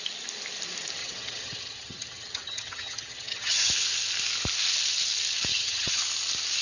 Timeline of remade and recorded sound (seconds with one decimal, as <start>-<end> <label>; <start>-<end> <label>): 0.0-1.0 recorded; 1.0-3.7 remade; 3.7-5.5 recorded; 5.5-6.0 remade; 6.0-6.6 recorded